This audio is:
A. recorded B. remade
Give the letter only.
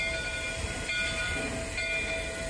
A